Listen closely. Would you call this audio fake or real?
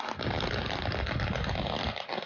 real